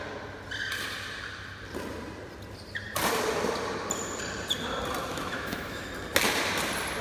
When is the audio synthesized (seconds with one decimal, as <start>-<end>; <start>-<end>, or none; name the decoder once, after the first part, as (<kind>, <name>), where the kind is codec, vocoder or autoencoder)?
5.1-5.9 (autoencoder, DAC-VAE)